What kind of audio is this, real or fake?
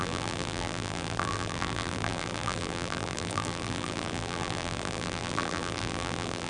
fake